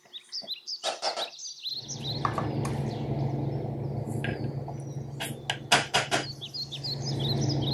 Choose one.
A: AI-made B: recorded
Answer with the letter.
B